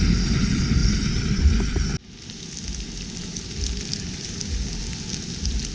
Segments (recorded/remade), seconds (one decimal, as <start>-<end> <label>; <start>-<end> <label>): 0.0-5.7 recorded